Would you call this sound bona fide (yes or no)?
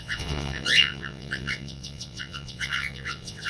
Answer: no